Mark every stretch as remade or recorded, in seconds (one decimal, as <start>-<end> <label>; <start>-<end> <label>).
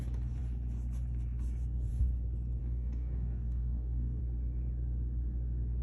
0.0-2.6 recorded; 2.6-4.2 remade; 4.2-5.8 recorded